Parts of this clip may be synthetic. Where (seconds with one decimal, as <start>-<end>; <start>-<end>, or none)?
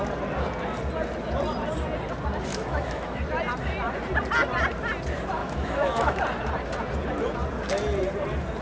2.5-3.2; 5.4-6.2